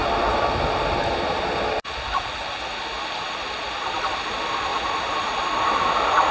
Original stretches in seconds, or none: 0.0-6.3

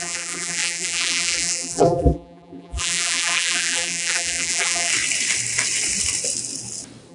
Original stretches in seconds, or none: 4.9-7.1

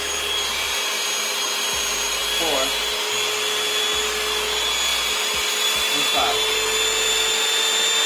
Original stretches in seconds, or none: 0.0-8.1

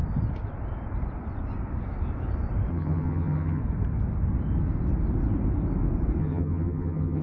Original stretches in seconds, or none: 0.0-2.7; 3.6-6.2